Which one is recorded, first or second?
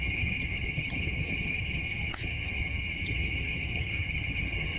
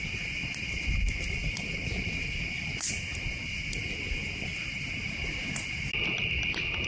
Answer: second